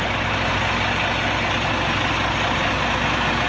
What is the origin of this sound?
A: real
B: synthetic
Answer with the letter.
A